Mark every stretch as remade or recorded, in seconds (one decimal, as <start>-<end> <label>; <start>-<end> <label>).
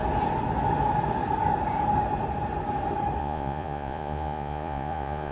0.0-3.2 recorded; 3.2-5.3 remade